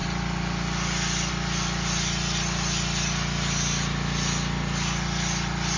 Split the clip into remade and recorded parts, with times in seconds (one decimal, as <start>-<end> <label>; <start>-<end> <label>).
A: 0.0-5.8 recorded